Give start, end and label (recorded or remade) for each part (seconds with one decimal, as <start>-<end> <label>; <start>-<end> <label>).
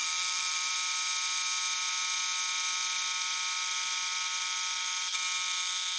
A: 0.0-0.7 remade; 0.7-6.0 recorded